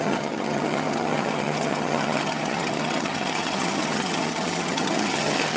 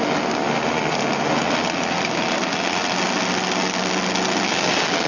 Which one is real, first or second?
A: second